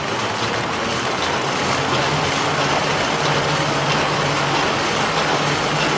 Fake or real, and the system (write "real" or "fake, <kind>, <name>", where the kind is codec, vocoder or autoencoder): real